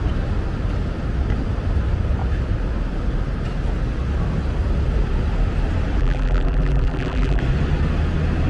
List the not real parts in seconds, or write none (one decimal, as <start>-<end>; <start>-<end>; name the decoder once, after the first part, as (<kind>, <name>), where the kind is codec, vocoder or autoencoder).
6.0-7.4 (vocoder, BigVGAN v2)